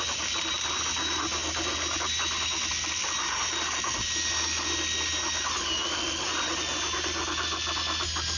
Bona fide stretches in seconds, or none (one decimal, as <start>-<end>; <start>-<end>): 0.0-8.4